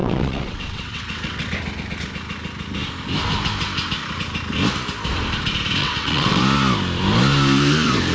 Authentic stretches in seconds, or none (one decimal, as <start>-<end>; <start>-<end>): 1.5-5.8; 6.4-8.1